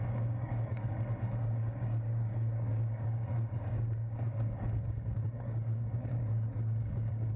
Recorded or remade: remade